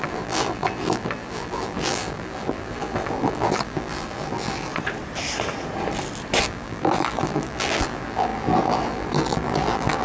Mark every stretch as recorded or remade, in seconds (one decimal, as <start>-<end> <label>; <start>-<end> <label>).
0.0-4.7 remade; 4.7-6.4 recorded; 6.4-10.0 remade